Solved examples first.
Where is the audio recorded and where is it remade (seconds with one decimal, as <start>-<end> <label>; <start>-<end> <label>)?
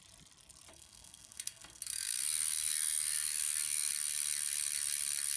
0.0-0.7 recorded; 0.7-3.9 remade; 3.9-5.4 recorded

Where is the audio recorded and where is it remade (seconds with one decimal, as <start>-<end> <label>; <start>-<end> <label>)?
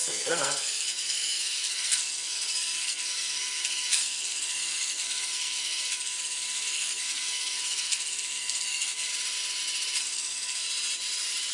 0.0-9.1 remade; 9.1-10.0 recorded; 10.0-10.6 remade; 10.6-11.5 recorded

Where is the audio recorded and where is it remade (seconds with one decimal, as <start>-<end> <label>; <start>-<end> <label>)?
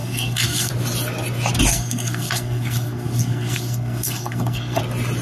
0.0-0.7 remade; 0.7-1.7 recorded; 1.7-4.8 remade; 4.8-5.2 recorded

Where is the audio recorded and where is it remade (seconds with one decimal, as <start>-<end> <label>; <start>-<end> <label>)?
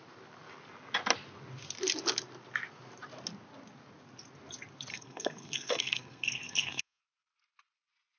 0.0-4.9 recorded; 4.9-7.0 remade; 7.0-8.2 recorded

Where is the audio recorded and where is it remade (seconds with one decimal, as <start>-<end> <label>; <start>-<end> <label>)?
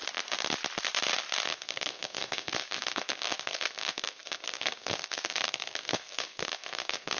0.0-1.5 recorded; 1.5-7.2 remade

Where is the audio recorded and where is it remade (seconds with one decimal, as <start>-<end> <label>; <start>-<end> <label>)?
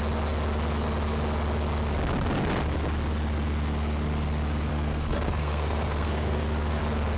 0.0-4.7 recorded; 4.7-6.8 remade; 6.8-7.2 recorded